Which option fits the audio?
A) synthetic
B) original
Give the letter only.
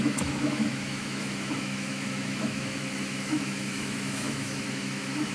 A